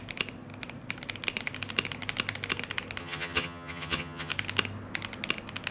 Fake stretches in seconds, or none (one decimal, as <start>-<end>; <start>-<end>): 3.0-4.3